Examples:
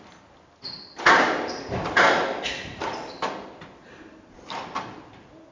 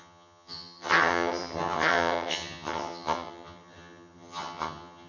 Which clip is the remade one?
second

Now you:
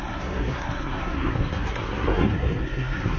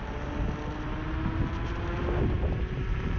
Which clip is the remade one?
first